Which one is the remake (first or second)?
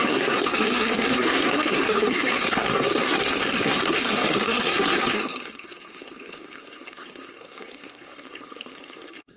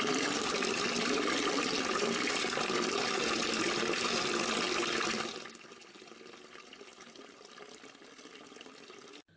first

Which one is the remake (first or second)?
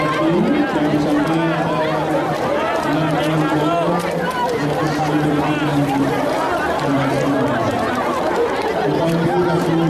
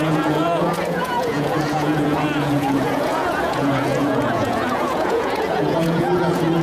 second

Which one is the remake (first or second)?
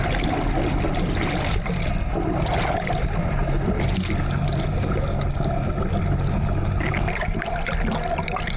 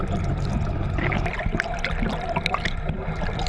second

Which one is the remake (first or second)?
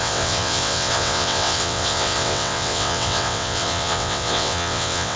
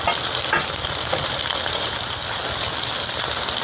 first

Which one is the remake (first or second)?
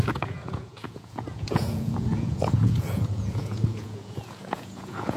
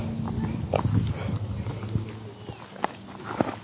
first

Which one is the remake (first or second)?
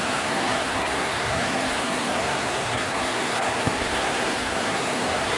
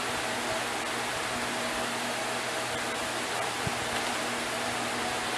first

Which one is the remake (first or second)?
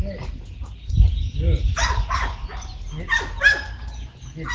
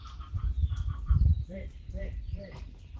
second